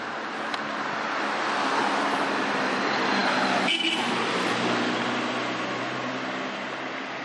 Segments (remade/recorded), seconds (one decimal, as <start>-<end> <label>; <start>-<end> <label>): 0.0-1.8 recorded; 1.8-2.4 remade; 2.4-7.2 recorded